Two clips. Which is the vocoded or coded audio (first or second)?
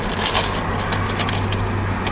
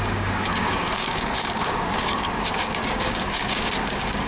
second